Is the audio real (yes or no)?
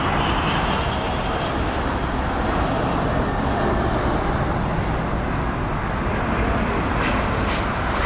yes